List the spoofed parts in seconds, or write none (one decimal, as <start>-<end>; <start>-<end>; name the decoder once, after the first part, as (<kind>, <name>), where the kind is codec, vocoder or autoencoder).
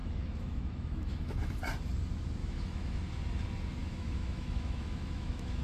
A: 0.0-1.6 (autoencoder, DAC-VAE); 2.4-3.0; 3.8-5.6